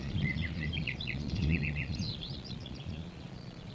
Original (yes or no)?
no